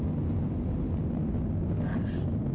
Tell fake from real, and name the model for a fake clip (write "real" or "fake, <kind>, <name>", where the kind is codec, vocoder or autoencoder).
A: real